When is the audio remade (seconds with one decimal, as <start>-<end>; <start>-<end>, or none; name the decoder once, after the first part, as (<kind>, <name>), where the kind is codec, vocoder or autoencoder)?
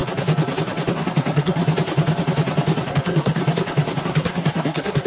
0.9-1.6 (codec, SNAC); 2.9-3.4; 4.0-5.1